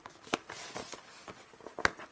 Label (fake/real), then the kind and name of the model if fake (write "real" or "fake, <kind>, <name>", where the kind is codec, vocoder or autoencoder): real